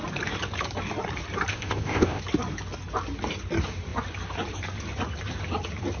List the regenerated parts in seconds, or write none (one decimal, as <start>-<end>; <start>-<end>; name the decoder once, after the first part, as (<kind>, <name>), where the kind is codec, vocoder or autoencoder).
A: 1.5-2.2 (codec, ZipCodec)